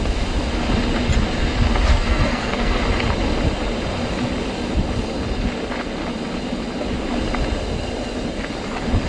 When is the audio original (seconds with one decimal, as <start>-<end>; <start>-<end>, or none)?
0.0-1.9; 2.8-9.1